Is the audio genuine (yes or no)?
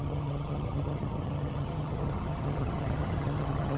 no